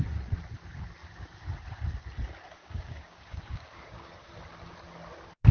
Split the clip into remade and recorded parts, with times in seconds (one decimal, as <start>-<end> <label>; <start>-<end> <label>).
0.0-2.6 recorded; 2.6-4.3 remade; 4.3-5.5 recorded

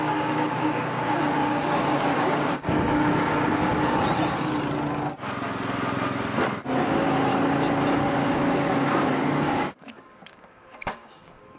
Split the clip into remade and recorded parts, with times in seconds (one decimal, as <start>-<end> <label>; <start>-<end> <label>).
0.0-3.6 remade; 3.6-6.8 recorded; 6.8-7.3 remade; 7.3-8.1 recorded; 8.1-11.6 remade

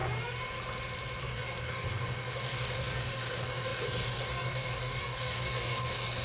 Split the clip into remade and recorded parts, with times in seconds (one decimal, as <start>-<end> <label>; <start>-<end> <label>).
0.0-1.2 recorded; 1.2-6.2 remade

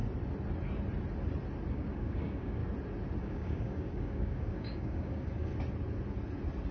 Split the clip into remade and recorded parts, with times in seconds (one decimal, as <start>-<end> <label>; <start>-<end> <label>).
0.0-1.7 recorded; 1.7-2.6 remade; 2.6-3.2 recorded; 3.2-5.5 remade; 5.5-6.7 recorded